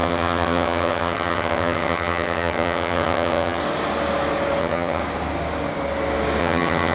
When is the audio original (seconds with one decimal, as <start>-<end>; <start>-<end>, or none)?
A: 3.6-4.6; 5.0-6.4